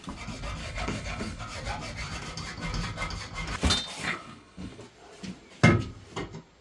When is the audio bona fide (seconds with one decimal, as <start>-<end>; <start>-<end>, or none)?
0.0-0.6; 1.4-4.0; 4.8-6.6